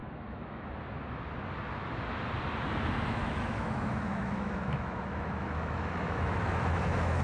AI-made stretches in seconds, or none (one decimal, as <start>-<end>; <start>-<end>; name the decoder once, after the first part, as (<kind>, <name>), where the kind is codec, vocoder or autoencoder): 0.0-0.7 (autoencoder, DAC-VAE); 3.1-7.2